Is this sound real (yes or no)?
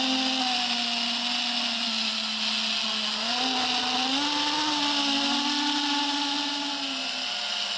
yes